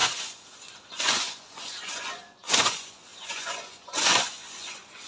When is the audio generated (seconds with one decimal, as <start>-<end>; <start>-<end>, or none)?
0.0-5.1